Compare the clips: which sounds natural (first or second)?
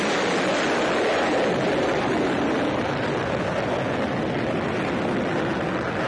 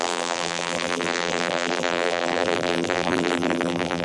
first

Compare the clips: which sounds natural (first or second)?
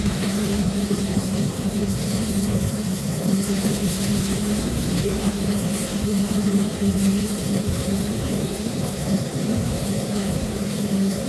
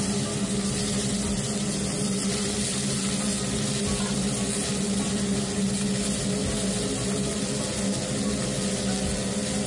second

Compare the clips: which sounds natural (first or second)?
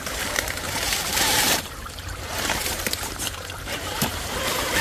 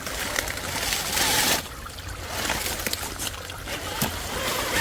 second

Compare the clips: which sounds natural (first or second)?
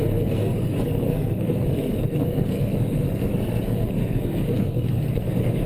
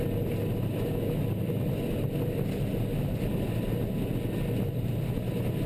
second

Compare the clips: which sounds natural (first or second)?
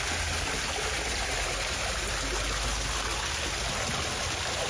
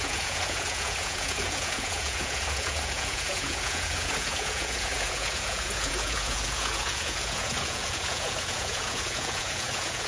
first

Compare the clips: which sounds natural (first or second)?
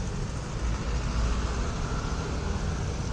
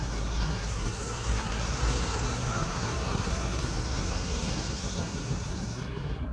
first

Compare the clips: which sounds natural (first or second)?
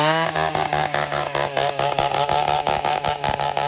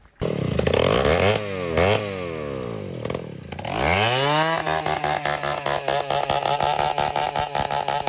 second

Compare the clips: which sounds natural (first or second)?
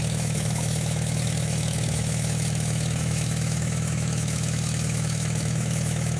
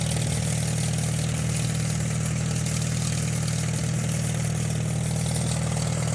second